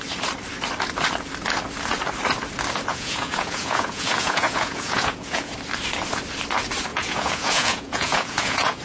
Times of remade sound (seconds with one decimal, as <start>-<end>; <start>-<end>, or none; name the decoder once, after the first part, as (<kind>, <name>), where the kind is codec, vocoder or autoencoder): 2.9-5.5 (vocoder, Vocos); 6.9-8.8